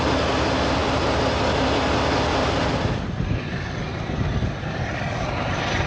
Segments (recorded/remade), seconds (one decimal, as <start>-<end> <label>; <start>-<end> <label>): 0.0-5.9 recorded